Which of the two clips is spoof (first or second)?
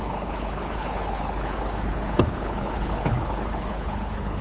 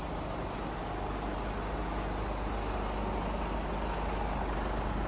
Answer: first